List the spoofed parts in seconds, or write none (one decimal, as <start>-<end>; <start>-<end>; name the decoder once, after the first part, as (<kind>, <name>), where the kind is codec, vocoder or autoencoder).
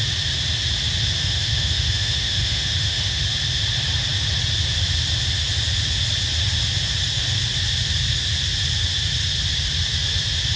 1.2-3.2 (autoencoder, DAC-VAE)